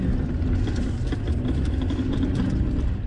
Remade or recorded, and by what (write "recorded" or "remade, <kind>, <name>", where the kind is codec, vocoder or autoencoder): recorded